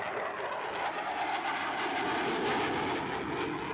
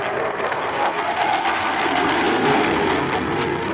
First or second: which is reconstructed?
second